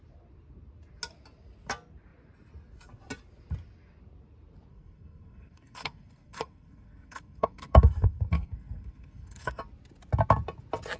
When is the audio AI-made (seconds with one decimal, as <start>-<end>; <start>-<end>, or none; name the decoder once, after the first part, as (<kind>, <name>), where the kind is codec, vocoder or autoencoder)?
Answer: 4.7-9.6 (codec, SNAC)